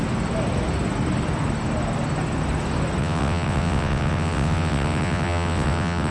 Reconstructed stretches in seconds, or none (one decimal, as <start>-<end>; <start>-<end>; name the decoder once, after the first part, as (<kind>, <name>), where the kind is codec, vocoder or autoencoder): 3.0-6.1 (vocoder, WaveNeXt)

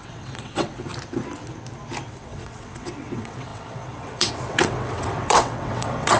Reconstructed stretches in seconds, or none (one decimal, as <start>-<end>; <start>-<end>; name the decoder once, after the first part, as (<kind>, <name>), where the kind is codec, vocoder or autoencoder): 0.0-0.9 (vocoder, WaveNeXt); 2.1-6.2

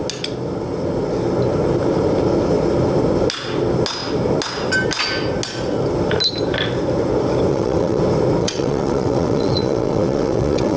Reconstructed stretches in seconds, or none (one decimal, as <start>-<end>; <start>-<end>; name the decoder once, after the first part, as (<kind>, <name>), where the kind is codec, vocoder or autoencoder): 7.5-8.0 (vocoder, WaveNeXt); 8.4-10.8

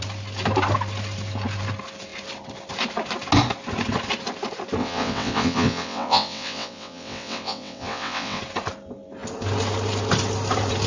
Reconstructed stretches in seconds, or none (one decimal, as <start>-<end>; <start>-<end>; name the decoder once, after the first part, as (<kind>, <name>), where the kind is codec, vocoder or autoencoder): 4.8-8.4 (vocoder, WaveNeXt)

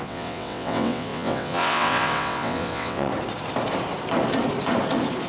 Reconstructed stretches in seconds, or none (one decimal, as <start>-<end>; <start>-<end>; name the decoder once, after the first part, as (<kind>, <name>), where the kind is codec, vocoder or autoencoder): 0.0-3.1 (vocoder, WaveNeXt)

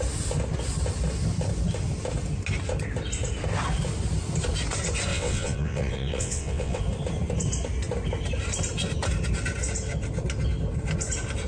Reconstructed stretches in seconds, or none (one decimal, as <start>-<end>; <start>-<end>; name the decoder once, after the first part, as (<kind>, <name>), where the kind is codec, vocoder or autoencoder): 5.1-6.8 (vocoder, WaveNeXt)

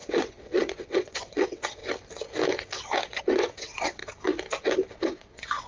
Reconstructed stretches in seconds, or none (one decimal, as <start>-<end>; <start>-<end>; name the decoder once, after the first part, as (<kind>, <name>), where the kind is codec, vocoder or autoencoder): 0.0-1.8 (vocoder, WaveNeXt); 3.2-4.0; 5.0-5.7

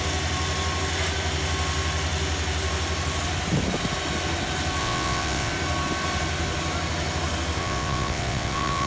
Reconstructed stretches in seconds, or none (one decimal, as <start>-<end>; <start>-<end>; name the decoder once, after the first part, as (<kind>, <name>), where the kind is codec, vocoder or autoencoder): 4.8-5.5 (vocoder, WaveNeXt); 7.6-8.9